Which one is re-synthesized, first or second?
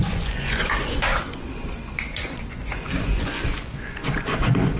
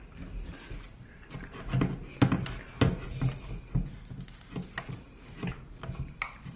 first